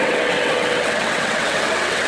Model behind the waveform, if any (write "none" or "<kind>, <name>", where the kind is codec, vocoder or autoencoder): vocoder, WaveNeXt